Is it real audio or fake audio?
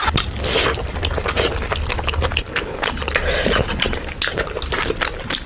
real